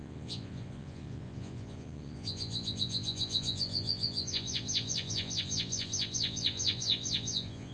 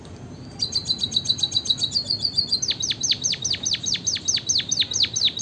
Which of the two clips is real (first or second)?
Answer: second